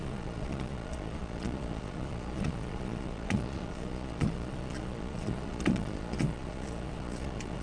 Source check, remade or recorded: remade